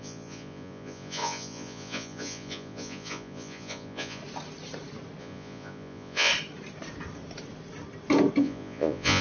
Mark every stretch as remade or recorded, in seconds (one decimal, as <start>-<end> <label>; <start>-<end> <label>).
0.0-4.2 remade; 4.2-5.2 recorded; 5.2-6.3 remade; 6.3-8.4 recorded; 8.4-9.2 remade

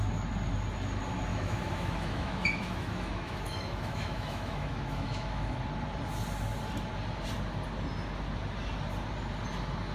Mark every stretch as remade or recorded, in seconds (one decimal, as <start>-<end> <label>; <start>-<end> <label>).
0.0-1.3 recorded; 1.3-5.6 remade; 5.6-9.9 recorded

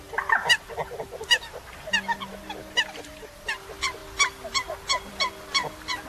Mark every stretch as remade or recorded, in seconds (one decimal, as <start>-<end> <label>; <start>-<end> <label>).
0.0-6.1 recorded

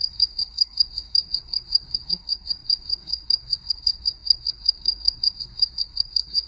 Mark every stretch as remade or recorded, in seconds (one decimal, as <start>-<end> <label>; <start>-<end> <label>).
0.0-6.5 remade